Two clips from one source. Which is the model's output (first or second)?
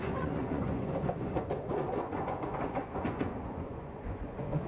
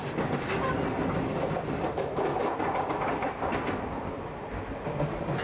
first